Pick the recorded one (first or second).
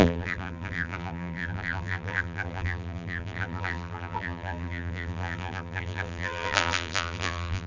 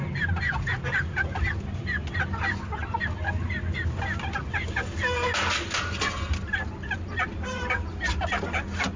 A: second